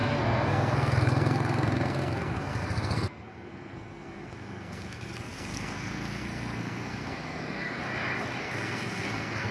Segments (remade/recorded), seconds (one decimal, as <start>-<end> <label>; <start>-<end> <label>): 0.0-7.8 remade; 7.8-8.4 recorded; 8.4-9.5 remade